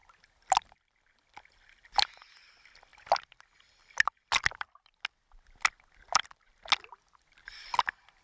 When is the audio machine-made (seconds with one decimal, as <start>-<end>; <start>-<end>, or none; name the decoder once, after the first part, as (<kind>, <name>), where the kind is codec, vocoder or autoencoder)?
none